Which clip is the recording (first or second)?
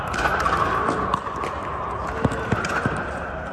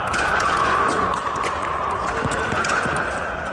first